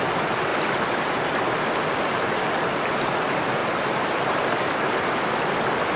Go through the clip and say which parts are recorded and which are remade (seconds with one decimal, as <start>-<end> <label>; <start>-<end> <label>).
0.0-6.0 recorded